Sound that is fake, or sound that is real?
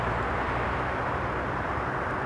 real